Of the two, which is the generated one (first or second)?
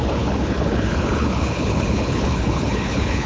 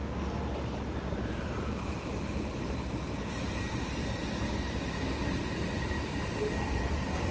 first